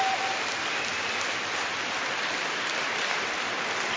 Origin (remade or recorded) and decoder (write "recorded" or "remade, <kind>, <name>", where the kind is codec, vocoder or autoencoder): recorded